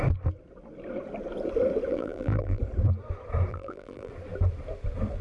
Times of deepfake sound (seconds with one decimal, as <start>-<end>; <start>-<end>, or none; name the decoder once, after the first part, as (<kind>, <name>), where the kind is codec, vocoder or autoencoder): 1.9-2.6 (vocoder, BigVGAN v2); 3.5-4.1